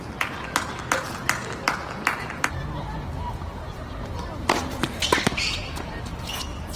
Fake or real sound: real